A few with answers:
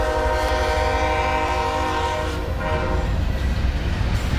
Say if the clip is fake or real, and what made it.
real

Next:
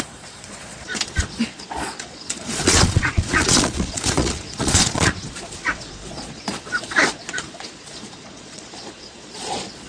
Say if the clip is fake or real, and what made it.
fake, vocoder, Vocos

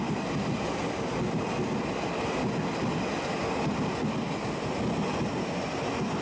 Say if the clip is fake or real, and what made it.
real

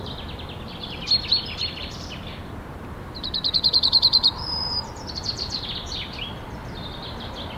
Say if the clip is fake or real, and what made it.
fake, vocoder, BigVGAN v2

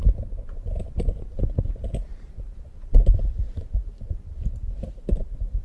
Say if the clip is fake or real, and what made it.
fake, vocoder, BigVGAN v2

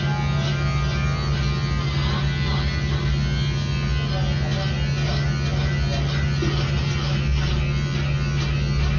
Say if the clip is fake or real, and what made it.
real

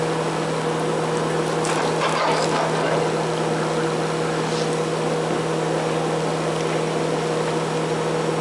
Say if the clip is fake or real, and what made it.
real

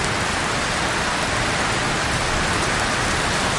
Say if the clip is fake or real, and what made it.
real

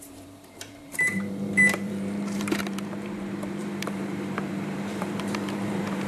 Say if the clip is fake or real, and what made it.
fake, vocoder, BigVGAN v2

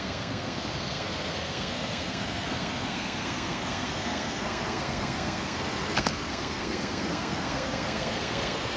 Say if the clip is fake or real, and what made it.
fake, codec, SNAC